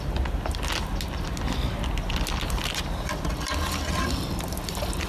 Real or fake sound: real